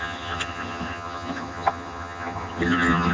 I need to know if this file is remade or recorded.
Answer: remade